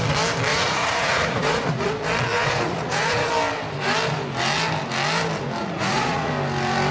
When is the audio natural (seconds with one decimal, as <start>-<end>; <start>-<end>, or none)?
0.0-0.5; 1.9-2.3; 3.3-5.6; 6.3-6.9